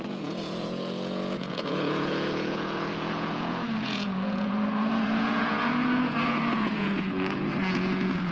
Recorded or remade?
remade